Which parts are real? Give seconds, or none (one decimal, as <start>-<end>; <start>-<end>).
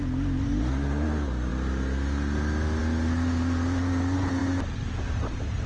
0.0-5.7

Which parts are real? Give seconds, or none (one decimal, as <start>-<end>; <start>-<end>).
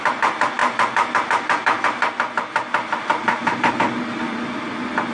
0.0-5.1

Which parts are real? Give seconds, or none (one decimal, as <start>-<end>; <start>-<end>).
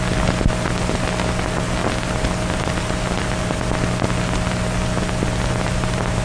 0.0-6.2